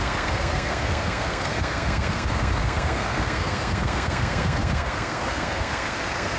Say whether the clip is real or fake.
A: fake